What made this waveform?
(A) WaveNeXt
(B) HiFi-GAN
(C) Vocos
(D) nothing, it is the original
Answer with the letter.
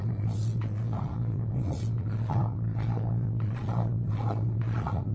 C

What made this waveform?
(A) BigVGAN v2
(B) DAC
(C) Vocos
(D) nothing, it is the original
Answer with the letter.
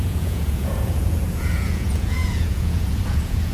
C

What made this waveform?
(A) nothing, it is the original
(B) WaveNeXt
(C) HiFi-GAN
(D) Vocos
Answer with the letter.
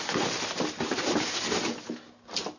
A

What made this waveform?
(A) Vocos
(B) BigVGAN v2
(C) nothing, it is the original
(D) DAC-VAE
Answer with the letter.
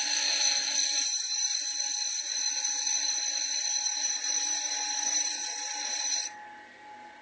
C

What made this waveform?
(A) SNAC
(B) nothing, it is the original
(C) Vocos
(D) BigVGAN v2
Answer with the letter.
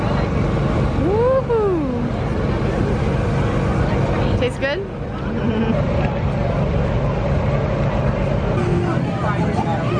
B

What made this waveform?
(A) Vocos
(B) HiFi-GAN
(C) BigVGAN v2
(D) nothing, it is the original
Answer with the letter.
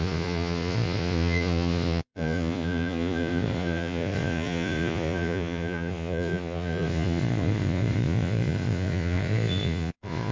A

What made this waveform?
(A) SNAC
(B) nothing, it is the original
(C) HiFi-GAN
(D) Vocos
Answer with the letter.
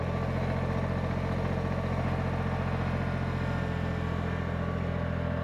B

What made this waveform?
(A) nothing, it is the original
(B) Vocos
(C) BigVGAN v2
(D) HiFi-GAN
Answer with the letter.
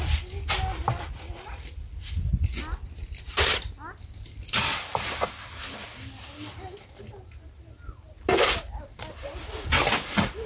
A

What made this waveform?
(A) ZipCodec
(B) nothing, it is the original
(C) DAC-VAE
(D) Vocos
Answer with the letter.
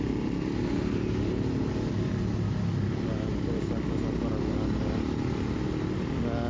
B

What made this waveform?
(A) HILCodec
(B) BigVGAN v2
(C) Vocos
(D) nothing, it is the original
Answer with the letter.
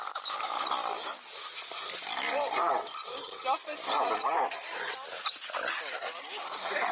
D